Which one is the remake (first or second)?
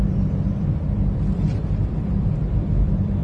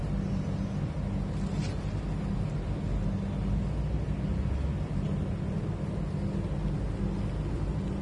first